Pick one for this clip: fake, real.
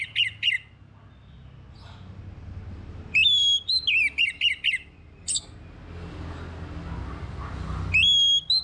real